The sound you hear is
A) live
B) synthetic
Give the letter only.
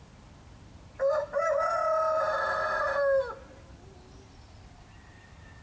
A